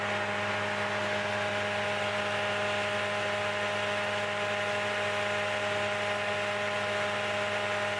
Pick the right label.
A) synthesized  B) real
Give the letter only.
B